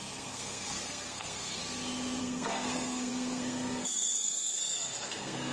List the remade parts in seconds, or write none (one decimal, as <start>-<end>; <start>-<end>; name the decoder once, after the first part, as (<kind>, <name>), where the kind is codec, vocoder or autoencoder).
0.0-1.6 (codec, SNAC); 2.2-5.5